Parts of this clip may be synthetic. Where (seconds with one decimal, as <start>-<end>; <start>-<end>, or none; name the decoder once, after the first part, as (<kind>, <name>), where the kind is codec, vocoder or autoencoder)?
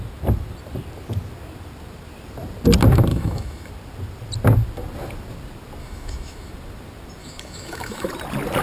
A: 3.1-3.7 (autoencoder, DAC-VAE); 5.8-6.5; 7.2-8.1